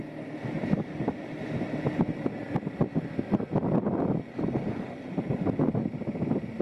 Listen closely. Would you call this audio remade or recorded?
recorded